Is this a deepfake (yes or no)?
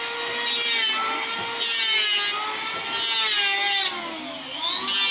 no